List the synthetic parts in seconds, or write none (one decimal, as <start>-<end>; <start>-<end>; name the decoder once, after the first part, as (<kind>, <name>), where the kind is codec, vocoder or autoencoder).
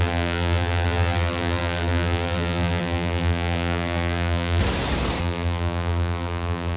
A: 0.0-4.6 (vocoder, BigVGAN v2); 5.2-6.8